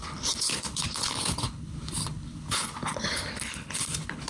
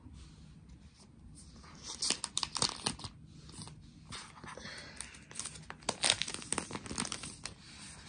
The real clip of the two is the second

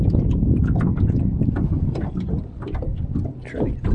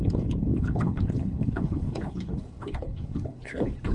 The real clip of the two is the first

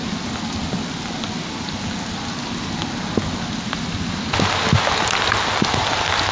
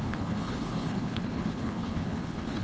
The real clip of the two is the first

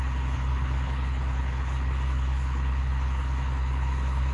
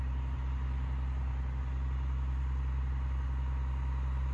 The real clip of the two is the second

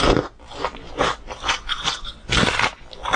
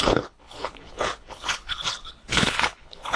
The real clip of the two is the first